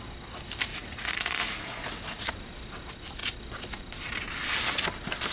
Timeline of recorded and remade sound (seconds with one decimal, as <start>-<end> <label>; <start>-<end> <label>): 0.0-0.7 recorded; 0.7-2.3 remade; 2.3-5.3 recorded

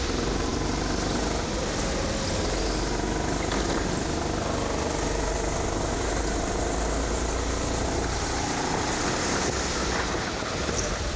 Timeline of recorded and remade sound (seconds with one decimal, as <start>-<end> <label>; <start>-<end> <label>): 0.0-11.2 recorded